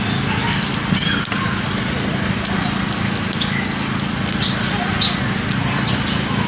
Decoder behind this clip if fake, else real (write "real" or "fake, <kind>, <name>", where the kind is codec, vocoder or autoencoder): real